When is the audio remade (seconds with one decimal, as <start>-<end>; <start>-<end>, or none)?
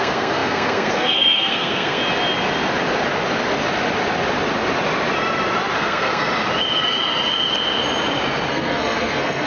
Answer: 0.0-2.0; 5.8-6.2; 8.5-9.5